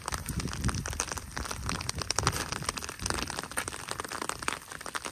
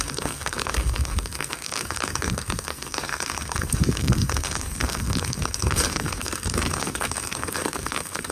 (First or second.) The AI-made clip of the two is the second